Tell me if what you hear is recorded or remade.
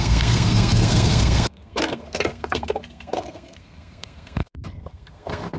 remade